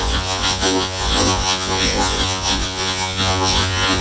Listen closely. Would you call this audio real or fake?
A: fake